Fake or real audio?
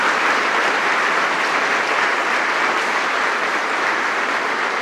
real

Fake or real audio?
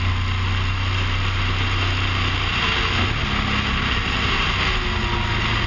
real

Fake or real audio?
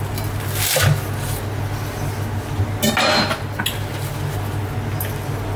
real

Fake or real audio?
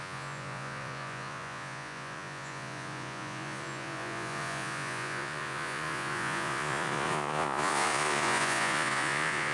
fake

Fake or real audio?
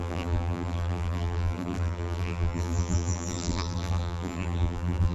fake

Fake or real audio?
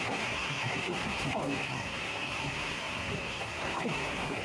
fake